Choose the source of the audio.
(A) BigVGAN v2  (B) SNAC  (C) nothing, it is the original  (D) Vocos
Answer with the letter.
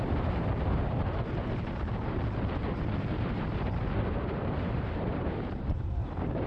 A